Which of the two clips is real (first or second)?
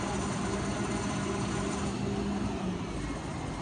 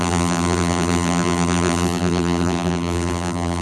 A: first